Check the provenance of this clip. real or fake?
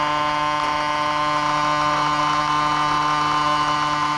real